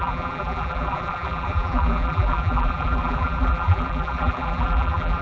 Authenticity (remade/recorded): remade